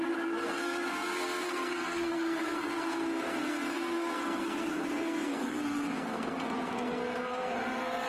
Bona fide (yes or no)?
no